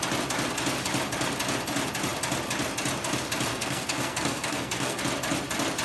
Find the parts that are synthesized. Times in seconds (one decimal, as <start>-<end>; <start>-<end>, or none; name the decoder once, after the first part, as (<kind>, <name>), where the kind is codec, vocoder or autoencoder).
3.5-5.0 (codec, SNAC)